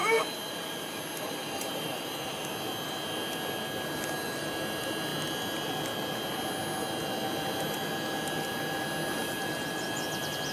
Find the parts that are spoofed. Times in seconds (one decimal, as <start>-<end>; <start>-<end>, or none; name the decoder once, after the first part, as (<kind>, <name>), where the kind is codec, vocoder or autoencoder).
0.0-2.4 (vocoder, BigVGAN v2)